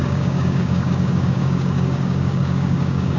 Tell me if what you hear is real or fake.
fake